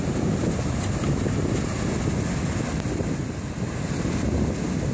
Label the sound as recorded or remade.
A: recorded